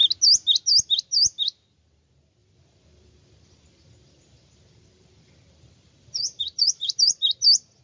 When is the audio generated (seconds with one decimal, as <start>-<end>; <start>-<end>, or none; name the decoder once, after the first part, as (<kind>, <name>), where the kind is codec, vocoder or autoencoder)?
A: 2.4-7.0 (vocoder, BigVGAN v2)

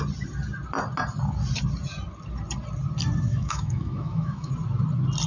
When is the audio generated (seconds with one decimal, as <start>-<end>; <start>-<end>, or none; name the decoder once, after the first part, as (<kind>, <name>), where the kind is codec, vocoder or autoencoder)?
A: 3.3-4.5 (autoencoder, DAC-VAE)

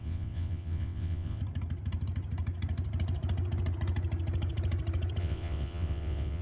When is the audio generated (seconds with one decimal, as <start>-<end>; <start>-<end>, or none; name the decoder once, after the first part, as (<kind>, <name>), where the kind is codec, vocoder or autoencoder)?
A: 0.0-1.4 (vocoder, WaveNeXt); 5.2-6.4

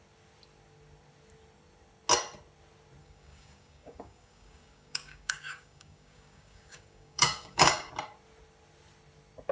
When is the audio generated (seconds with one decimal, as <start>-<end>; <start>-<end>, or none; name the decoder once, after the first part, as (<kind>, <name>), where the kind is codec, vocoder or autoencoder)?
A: 3.0-7.9 (codec, DAC)

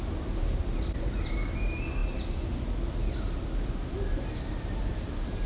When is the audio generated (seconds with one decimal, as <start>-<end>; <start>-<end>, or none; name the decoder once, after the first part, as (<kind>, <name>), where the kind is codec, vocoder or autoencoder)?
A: none

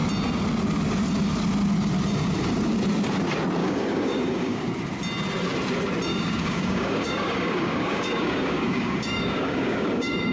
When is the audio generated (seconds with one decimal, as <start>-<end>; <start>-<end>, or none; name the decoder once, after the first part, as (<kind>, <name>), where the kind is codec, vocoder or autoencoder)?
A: 3.6-4.6 (codec, DAC); 6.1-10.3

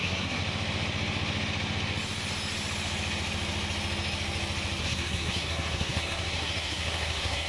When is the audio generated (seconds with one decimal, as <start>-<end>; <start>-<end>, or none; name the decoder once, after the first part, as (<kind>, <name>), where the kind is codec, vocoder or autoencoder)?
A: 0.0-0.4 (codec, SNAC); 4.8-7.5

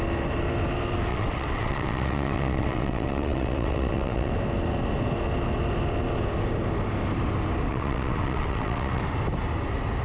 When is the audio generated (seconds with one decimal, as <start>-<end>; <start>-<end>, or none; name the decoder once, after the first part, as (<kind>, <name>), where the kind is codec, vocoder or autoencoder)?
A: 1.1-4.3 (vocoder, WaveNeXt); 7.7-9.0